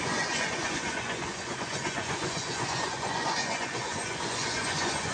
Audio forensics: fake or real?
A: fake